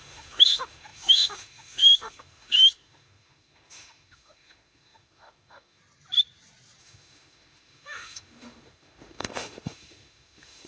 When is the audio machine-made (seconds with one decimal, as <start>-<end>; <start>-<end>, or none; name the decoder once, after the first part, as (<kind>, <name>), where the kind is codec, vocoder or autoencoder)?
0.0-5.8 (autoencoder, DAC-VAE); 6.8-10.7